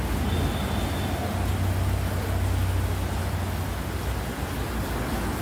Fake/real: real